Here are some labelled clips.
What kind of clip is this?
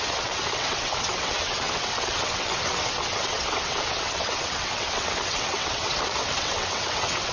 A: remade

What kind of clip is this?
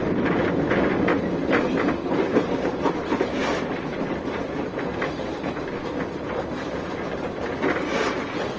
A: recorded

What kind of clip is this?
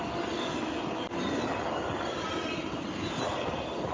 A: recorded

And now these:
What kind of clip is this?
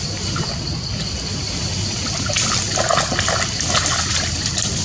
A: recorded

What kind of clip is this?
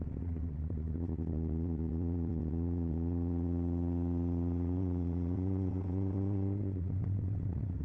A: remade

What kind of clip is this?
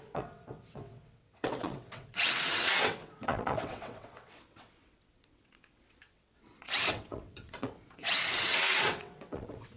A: remade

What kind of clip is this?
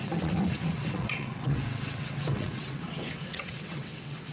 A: remade